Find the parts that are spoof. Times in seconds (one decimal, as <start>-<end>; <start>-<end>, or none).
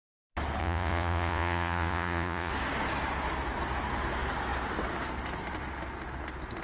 0.6-2.5